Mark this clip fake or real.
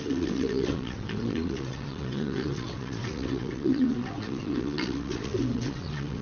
fake